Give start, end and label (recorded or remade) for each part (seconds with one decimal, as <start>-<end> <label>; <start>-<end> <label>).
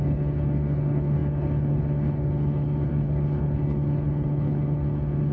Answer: 0.0-5.3 remade